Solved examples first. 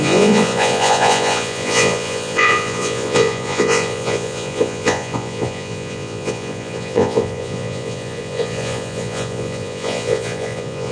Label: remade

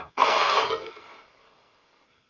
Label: remade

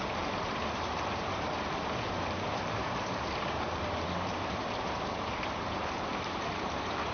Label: remade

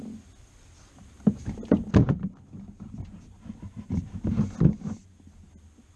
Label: recorded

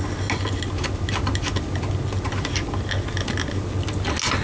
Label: recorded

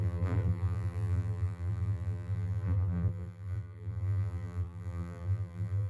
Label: remade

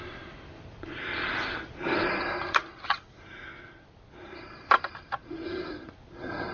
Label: recorded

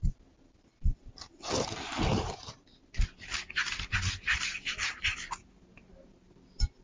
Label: recorded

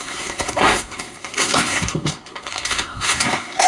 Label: remade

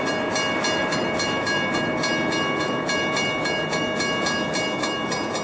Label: recorded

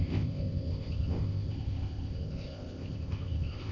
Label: remade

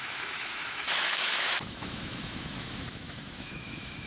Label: remade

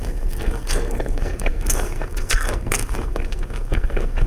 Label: remade